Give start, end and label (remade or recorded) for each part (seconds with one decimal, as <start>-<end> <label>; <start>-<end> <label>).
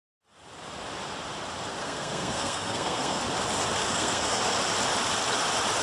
0.0-1.8 recorded; 1.8-3.2 remade; 3.2-3.8 recorded; 3.8-4.4 remade; 4.4-5.8 recorded